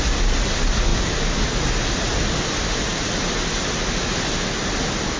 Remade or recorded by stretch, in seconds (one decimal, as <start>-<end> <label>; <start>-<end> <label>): 0.0-5.2 recorded